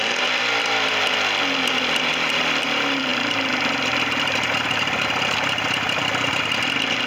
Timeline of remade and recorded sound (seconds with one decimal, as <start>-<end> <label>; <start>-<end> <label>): 0.0-1.0 remade; 1.0-2.1 recorded; 2.1-7.1 remade